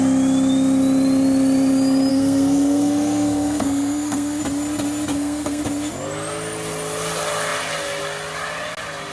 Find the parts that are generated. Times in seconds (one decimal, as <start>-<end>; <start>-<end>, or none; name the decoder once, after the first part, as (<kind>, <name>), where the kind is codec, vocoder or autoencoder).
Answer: 2.1-4.4 (codec, SNAC); 5.1-5.6